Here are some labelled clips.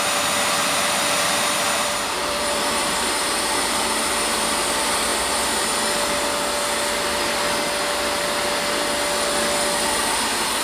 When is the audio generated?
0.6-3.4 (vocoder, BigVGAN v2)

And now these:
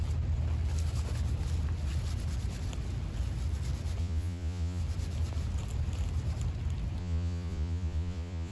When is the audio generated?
4.0-4.8 (vocoder, Vocos); 7.0-8.5

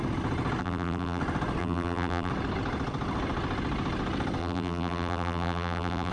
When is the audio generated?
0.6-1.2 (vocoder, BigVGAN v2); 1.6-2.3; 4.4-6.1

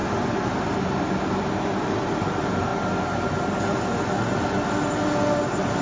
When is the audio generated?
0.5-2.7 (vocoder, BigVGAN v2); 5.3-5.8

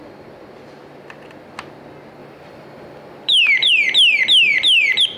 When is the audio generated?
2.2-3.7 (vocoder, BigVGAN v2); 4.5-5.2

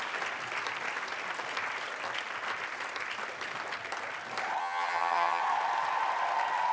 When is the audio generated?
4.6-5.4 (vocoder, HiFi-GAN)

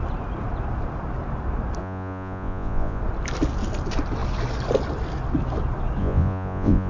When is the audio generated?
1.8-3.0 (vocoder, Vocos); 6.0-6.9

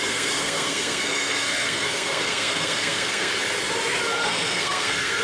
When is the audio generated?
0.0-3.3 (codec, SNAC); 4.2-5.2